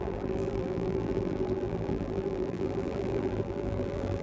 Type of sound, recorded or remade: remade